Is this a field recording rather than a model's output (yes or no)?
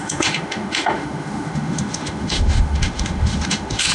no